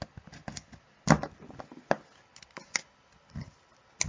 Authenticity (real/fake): real